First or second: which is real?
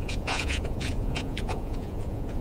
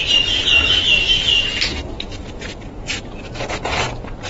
second